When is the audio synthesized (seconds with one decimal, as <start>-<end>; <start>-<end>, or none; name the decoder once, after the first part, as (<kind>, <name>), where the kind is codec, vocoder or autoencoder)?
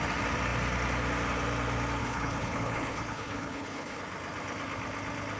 2.0-4.0 (codec, HILCodec)